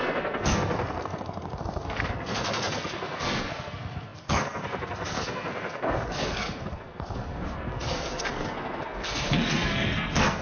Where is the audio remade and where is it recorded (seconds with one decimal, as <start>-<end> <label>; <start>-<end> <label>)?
0.0-10.4 remade